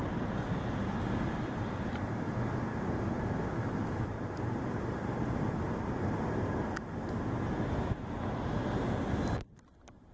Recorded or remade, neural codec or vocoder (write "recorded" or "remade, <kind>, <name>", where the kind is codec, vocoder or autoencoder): recorded